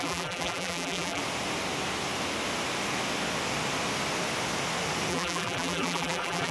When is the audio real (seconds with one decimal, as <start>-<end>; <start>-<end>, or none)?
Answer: 1.2-5.1